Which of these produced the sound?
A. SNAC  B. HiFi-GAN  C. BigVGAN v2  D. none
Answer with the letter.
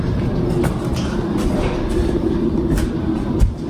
D